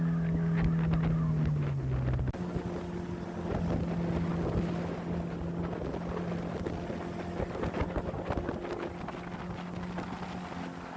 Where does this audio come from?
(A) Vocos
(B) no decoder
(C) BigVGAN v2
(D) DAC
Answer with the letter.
B